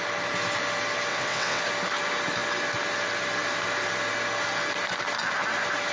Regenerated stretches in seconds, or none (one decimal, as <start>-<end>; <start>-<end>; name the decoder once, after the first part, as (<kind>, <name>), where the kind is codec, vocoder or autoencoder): 1.1-1.6 (vocoder, WaveNeXt)